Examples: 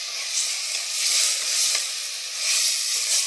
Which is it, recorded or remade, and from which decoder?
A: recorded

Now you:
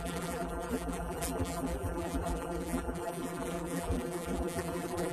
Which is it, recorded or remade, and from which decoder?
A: remade, vocoder, BigVGAN v2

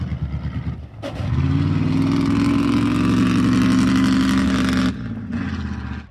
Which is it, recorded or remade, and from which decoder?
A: recorded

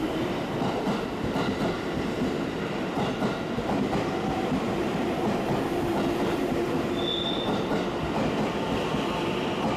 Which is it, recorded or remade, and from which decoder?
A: remade, vocoder, BigVGAN v2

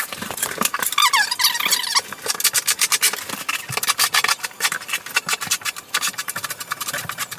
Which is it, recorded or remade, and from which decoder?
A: recorded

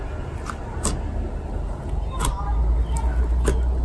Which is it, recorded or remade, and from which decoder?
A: recorded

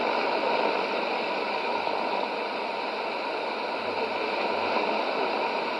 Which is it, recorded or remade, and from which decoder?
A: recorded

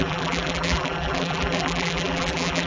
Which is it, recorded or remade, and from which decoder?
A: remade, vocoder, BigVGAN v2